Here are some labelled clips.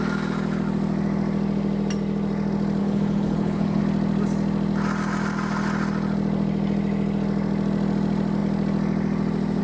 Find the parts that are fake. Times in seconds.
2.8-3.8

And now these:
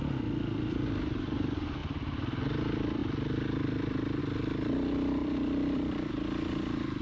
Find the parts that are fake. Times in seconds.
1.8-2.5; 5.2-6.1

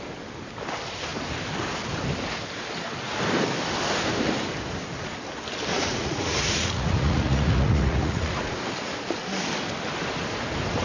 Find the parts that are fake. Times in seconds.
5.7-8.5

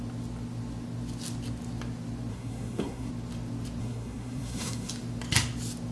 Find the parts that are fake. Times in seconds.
2.3-3.1; 3.8-4.9

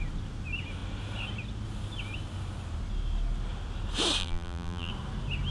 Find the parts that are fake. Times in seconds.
4.2-4.9